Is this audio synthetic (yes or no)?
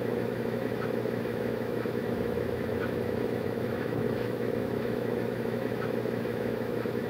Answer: yes